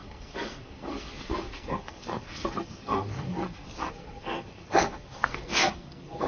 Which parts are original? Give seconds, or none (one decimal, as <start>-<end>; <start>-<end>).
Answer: none